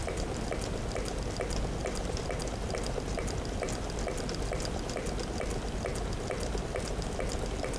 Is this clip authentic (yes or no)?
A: yes